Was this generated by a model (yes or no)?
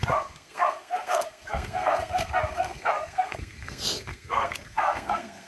yes